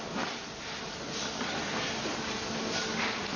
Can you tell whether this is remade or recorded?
recorded